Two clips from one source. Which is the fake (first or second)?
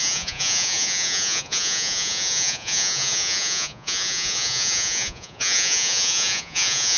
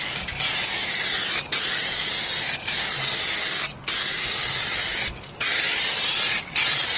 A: first